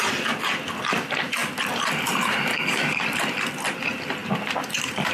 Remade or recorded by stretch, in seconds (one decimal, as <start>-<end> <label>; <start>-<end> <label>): 0.0-2.5 recorded; 2.5-3.2 remade; 3.2-5.1 recorded